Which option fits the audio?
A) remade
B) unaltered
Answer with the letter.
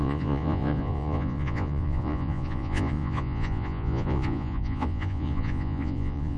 A